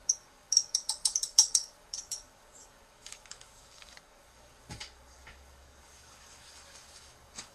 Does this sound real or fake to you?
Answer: fake